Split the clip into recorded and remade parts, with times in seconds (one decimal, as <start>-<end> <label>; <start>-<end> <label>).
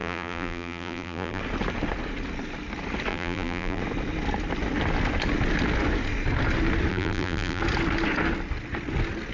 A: 0.0-1.4 remade; 1.4-3.1 recorded; 3.1-3.8 remade; 3.8-6.9 recorded; 6.9-7.6 remade; 7.6-9.3 recorded